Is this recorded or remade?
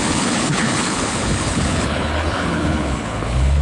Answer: remade